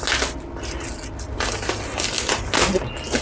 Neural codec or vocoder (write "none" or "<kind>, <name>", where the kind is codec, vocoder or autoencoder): none